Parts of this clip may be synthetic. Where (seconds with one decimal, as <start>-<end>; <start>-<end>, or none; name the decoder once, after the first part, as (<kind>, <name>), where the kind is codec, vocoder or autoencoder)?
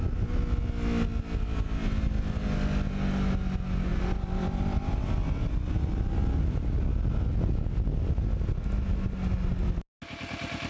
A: 3.9-5.7 (vocoder, BigVGAN v2)